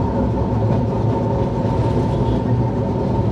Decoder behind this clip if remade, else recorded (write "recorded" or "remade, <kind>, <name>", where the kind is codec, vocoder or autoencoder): recorded